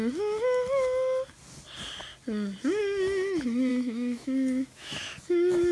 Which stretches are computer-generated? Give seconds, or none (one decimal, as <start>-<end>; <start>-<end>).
3.7-5.7